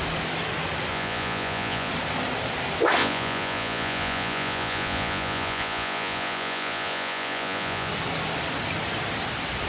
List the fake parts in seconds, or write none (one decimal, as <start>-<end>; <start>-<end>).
0.9-1.9; 3.0-7.9